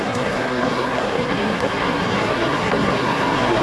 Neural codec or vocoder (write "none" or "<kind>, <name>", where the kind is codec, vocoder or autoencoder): codec, SNAC